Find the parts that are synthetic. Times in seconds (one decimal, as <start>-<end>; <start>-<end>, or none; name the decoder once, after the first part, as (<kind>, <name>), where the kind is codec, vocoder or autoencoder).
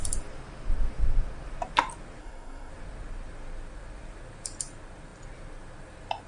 2.2-2.7 (codec, SNAC)